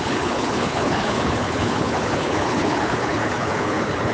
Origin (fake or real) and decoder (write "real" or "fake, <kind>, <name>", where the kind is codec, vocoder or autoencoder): fake, codec, HILCodec